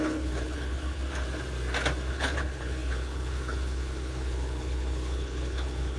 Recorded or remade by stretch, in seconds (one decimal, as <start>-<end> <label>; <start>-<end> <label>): 0.0-1.0 remade; 1.0-2.1 recorded; 2.1-6.0 remade